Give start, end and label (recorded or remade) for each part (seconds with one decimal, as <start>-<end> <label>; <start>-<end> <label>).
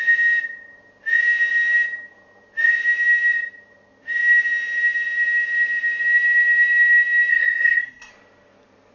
0.0-7.3 recorded; 7.3-8.1 remade; 8.1-8.9 recorded